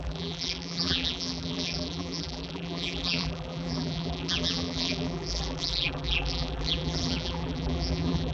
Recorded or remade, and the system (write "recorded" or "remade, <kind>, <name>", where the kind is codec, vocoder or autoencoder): remade, vocoder, BigVGAN v2